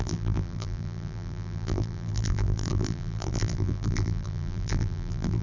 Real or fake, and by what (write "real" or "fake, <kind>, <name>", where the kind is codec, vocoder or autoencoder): fake, vocoder, BigVGAN v2